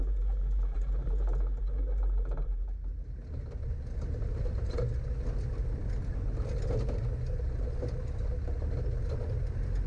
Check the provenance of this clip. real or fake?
real